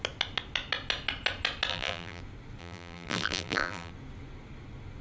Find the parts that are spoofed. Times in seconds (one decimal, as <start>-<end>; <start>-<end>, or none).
1.7-2.2; 2.6-3.9